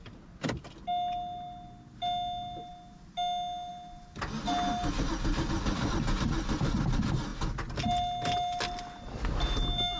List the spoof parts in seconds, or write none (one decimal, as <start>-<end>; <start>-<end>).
none